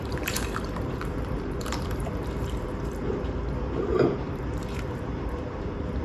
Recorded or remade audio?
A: remade